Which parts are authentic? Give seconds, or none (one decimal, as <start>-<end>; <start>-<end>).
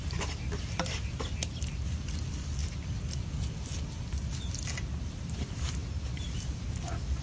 0.0-7.2